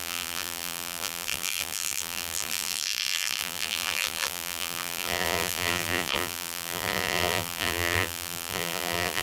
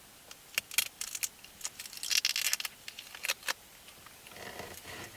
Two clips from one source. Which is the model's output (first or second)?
first